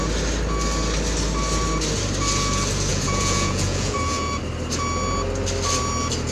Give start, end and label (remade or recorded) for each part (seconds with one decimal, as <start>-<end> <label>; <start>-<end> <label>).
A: 0.0-2.9 recorded; 2.9-4.4 remade; 4.4-6.3 recorded